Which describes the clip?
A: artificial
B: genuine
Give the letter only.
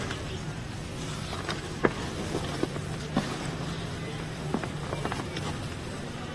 B